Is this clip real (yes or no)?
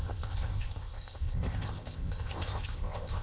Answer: no